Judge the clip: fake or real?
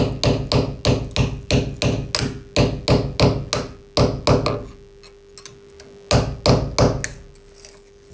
real